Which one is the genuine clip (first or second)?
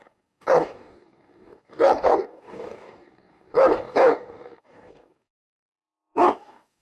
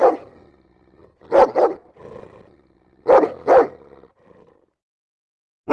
second